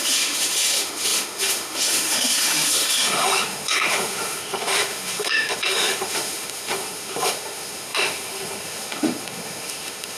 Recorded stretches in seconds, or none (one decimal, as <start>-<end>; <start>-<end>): none